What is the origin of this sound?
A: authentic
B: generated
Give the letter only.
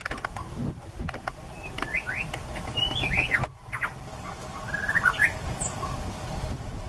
A